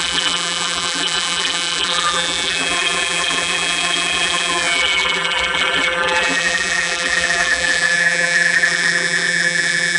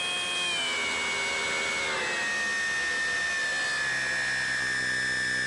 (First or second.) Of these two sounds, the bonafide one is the second